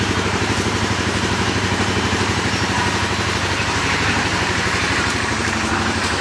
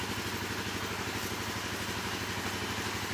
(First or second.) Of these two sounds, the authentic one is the second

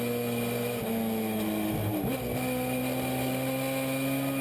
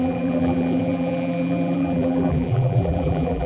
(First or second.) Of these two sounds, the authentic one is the first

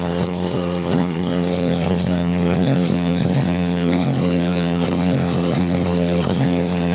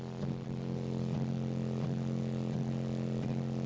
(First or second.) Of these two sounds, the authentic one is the second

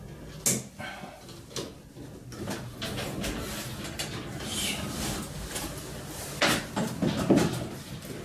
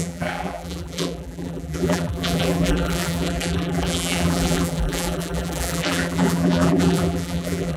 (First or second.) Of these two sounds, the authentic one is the first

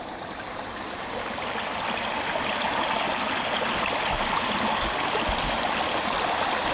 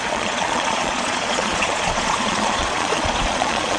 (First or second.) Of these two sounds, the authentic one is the first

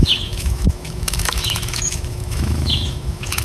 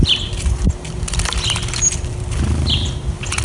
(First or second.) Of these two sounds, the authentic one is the second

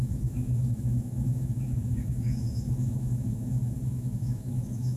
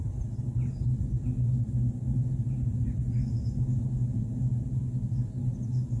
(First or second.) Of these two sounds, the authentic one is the second